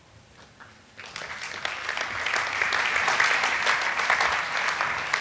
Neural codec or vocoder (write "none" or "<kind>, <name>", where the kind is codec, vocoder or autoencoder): none